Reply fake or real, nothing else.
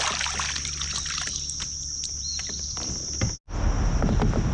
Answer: real